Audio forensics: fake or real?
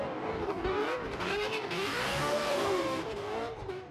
fake